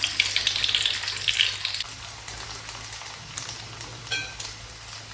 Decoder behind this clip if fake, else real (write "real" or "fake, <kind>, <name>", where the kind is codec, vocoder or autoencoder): real